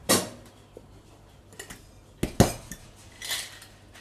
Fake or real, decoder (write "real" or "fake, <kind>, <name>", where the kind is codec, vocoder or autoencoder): real